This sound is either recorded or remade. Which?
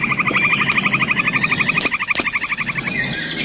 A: recorded